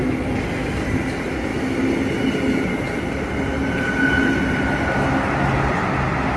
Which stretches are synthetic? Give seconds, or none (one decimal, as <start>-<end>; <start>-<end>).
none